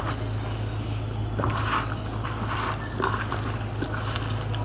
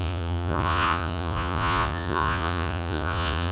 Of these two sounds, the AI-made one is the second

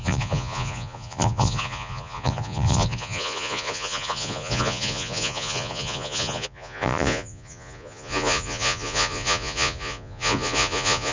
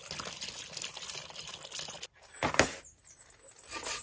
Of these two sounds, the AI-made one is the first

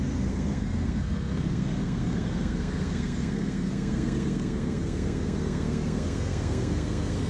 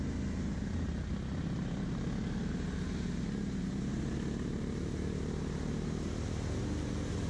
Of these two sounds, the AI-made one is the first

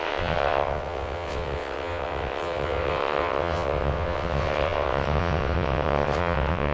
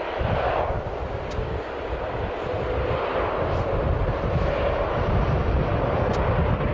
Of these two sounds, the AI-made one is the first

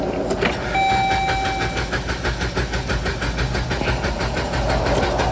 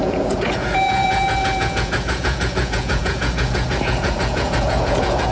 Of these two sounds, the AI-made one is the second